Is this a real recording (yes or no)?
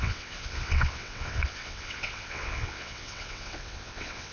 no